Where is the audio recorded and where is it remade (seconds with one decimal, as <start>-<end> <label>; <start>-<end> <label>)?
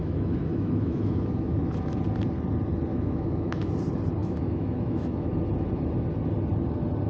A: 0.0-2.0 remade; 2.0-2.9 recorded; 2.9-3.7 remade; 3.7-4.2 recorded; 4.2-5.4 remade; 5.4-7.1 recorded